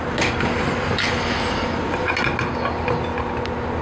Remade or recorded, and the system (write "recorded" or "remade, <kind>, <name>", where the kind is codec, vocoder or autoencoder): recorded